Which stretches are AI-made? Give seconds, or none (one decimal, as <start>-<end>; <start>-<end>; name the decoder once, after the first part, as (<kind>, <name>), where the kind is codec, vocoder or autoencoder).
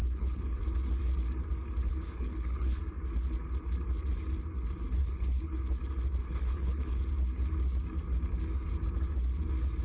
0.0-0.6 (codec, HILCodec); 1.9-2.8; 5.0-5.6; 6.2-7.0